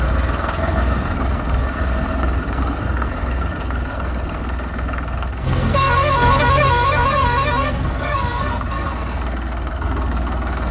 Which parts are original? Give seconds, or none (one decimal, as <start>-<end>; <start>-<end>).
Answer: none